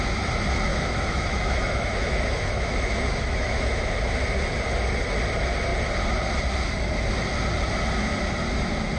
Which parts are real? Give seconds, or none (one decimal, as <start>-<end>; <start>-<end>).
0.0-0.7; 3.9-9.0